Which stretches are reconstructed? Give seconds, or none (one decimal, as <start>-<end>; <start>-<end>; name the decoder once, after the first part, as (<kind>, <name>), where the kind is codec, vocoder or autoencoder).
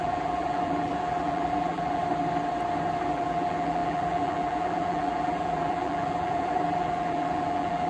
0.0-2.0 (vocoder, BigVGAN v2); 3.0-7.9